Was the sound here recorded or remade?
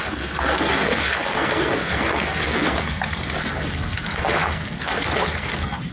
remade